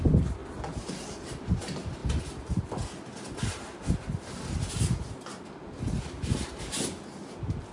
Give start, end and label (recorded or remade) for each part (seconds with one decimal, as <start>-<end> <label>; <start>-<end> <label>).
0.0-7.7 recorded